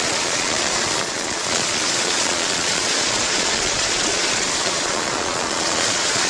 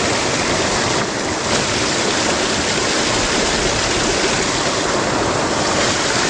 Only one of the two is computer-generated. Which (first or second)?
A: first